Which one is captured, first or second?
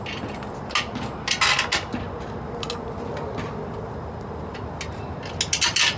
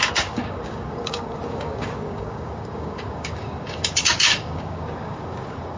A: first